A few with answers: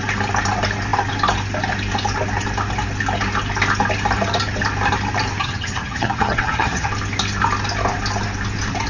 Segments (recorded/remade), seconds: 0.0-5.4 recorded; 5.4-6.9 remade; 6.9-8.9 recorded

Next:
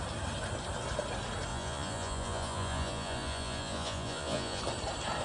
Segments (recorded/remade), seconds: 0.0-1.5 recorded; 1.5-4.6 remade; 4.6-5.2 recorded

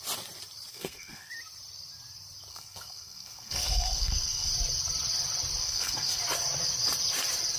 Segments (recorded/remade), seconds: 0.0-0.7 recorded; 0.7-1.3 remade; 1.3-2.5 recorded; 2.5-4.5 remade; 4.5-5.6 recorded; 5.6-6.2 remade; 6.2-7.6 recorded

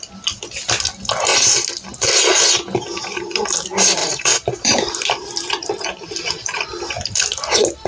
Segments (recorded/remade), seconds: 0.0-4.0 recorded; 4.0-6.6 remade; 6.6-7.9 recorded

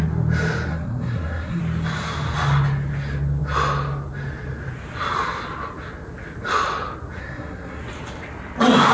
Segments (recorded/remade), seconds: 0.0-0.7 recorded; 0.7-1.6 remade; 1.6-7.2 recorded; 7.2-7.8 remade; 7.8-8.9 recorded